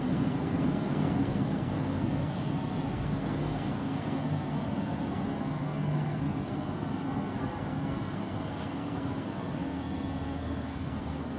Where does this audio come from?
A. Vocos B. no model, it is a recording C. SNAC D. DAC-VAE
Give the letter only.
C